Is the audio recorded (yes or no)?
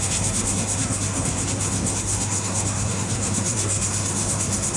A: no